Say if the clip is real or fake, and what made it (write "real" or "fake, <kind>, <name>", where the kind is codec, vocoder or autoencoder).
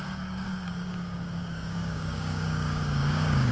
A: fake, codec, DAC